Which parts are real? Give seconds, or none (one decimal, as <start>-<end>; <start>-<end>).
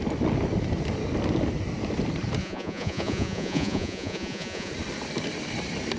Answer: 0.0-2.4; 4.7-6.0